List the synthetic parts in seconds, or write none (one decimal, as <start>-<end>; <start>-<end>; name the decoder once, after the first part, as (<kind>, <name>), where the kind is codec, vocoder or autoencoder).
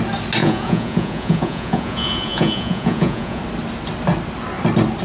0.4-3.4 (vocoder, Vocos)